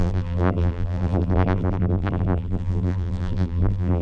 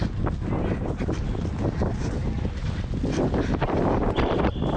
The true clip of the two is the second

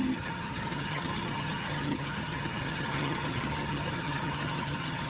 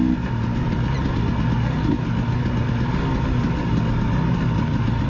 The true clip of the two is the second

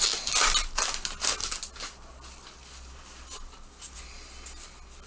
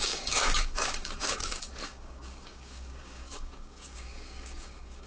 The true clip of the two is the first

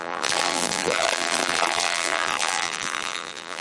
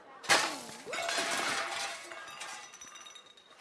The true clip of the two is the second